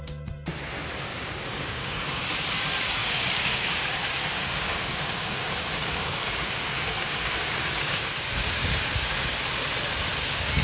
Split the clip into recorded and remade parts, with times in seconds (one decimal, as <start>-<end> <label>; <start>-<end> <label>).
0.0-1.1 recorded; 1.1-2.2 remade; 2.2-3.0 recorded; 3.0-8.1 remade; 8.1-8.6 recorded; 8.6-9.3 remade; 9.3-10.6 recorded